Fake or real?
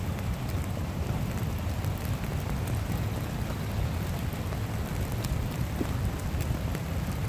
real